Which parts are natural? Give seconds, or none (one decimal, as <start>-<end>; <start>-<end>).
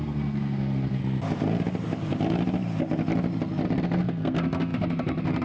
1.0-3.8